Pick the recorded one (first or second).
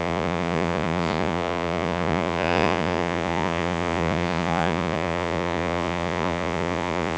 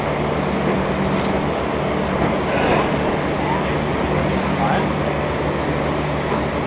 second